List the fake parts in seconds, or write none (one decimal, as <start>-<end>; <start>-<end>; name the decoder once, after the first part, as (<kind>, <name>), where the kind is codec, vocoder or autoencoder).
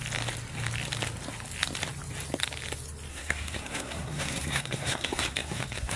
3.1-6.0 (codec, SNAC)